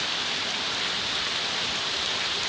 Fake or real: real